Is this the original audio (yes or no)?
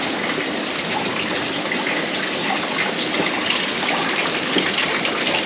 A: no